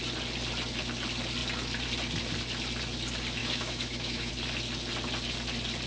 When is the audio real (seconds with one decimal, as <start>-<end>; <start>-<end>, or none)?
0.0-3.4; 4.3-5.9